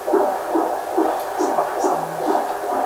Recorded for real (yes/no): yes